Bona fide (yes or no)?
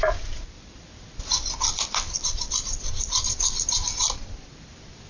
no